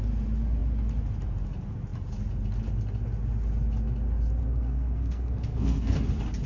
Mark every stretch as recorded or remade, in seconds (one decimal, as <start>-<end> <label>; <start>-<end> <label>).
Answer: 0.0-4.4 recorded; 4.4-6.0 remade; 6.0-6.5 recorded